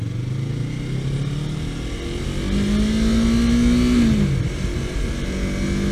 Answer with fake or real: real